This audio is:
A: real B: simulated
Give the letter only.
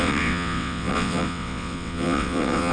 B